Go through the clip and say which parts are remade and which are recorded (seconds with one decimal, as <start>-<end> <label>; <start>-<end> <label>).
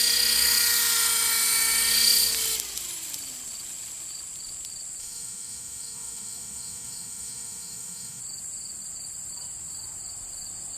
0.0-5.0 recorded; 5.0-8.2 remade; 8.2-10.8 recorded